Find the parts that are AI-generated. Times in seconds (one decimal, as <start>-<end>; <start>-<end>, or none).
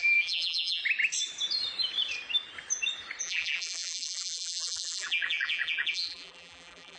0.0-0.8; 3.2-7.0